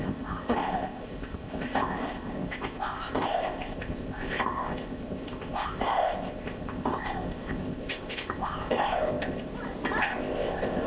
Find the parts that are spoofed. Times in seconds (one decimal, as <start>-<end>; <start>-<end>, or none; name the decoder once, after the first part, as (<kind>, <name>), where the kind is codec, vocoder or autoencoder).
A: 0.0-9.5 (codec, ZipCodec); 10.0-10.9